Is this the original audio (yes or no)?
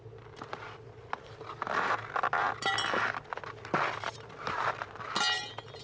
yes